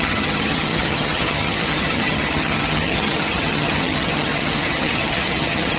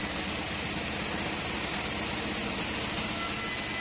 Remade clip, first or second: first